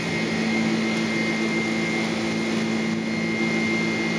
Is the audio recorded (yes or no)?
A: yes